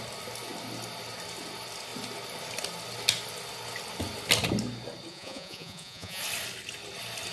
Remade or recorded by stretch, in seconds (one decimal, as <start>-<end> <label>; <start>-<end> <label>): 0.0-5.1 recorded; 5.1-6.2 remade; 6.2-7.3 recorded